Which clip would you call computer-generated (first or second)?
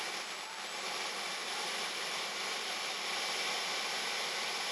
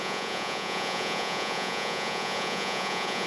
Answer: second